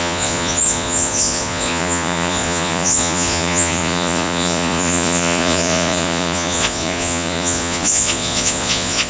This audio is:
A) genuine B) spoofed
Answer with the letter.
B